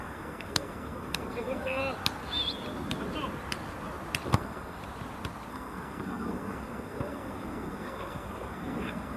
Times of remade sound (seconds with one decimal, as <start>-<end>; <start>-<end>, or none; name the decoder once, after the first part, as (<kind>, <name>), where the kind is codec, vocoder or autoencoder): 0.0-1.8 (codec, SNAC); 4.3-4.8; 5.5-9.2